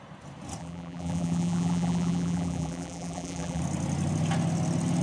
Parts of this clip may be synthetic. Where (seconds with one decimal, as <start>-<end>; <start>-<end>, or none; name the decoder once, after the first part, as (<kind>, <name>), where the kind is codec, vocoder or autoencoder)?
0.6-3.6 (vocoder, BigVGAN v2)